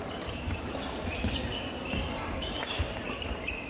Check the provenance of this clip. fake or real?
fake